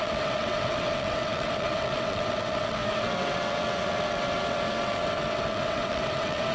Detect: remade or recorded remade